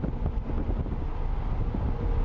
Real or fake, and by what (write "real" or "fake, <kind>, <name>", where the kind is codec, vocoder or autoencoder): real